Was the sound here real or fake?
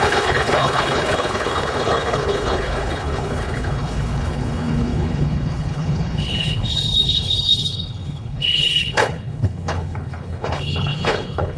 fake